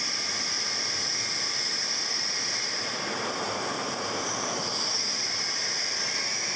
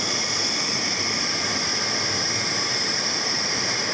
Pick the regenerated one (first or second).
second